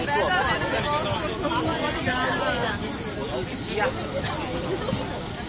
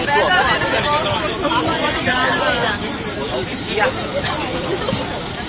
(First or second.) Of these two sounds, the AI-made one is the second